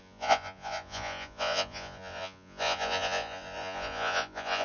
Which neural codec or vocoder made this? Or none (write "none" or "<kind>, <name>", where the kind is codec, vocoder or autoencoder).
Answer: vocoder, Vocos